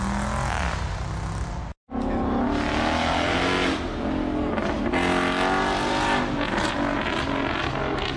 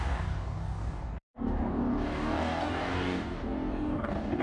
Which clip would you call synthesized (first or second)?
second